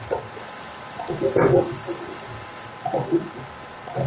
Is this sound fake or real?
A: real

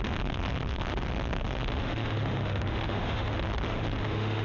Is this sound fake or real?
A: fake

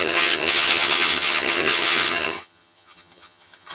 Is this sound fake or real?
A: fake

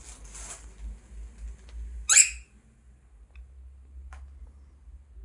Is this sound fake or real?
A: real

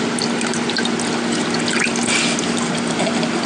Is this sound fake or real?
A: real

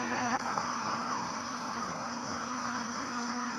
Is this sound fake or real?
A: fake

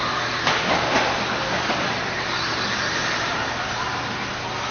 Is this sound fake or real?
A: real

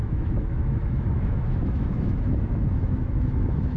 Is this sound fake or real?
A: fake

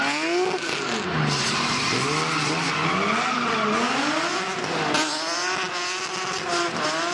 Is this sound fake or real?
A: real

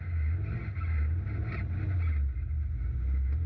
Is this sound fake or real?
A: real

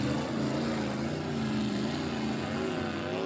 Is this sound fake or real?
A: real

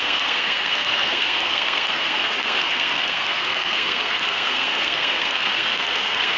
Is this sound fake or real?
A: fake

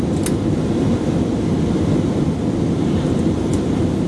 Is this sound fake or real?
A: real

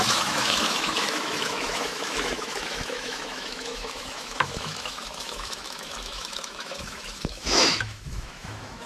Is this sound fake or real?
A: fake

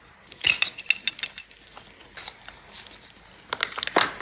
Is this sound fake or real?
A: real